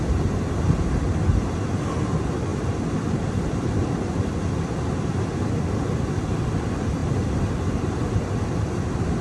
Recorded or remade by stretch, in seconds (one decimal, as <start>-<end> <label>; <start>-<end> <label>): 0.0-2.5 recorded; 2.5-4.3 remade; 4.3-7.0 recorded; 7.0-8.7 remade; 8.7-9.2 recorded